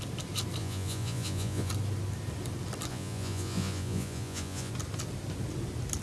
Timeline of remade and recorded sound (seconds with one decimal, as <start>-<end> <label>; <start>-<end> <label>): 0.0-0.6 recorded; 0.6-1.7 remade; 1.7-2.9 recorded; 2.9-4.7 remade; 4.7-6.0 recorded